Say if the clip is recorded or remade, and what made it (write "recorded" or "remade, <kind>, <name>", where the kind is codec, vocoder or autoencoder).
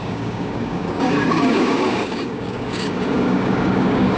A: remade, codec, DAC